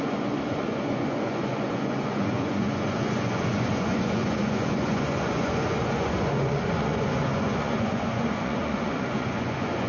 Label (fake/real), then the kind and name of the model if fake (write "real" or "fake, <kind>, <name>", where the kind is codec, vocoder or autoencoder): fake, vocoder, Vocos